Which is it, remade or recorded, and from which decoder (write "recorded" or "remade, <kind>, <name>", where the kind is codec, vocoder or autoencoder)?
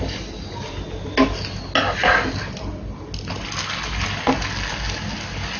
recorded